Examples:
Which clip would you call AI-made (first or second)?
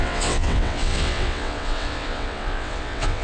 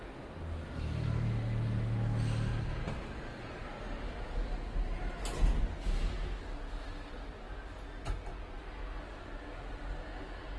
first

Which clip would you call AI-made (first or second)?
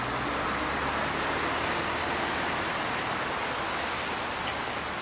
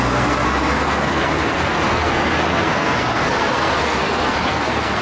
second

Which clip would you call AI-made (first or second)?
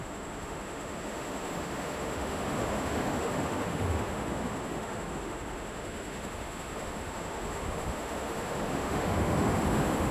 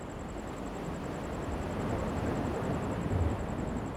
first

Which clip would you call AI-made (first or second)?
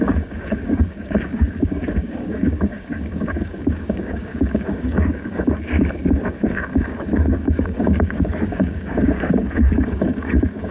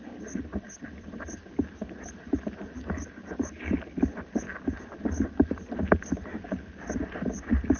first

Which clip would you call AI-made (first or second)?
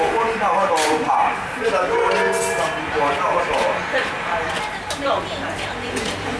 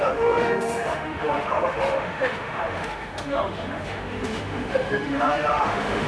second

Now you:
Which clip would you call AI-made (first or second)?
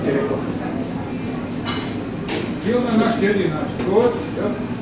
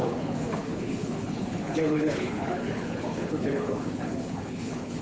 second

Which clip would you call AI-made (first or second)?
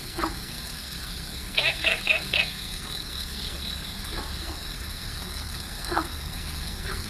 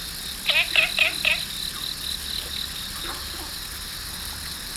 first